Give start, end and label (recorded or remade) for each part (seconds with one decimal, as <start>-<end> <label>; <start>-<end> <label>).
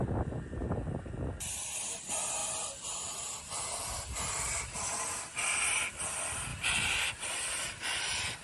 0.0-6.5 recorded; 6.5-7.1 remade; 7.1-8.4 recorded